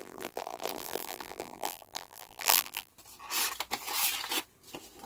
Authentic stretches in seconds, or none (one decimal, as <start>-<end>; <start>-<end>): 2.9-5.1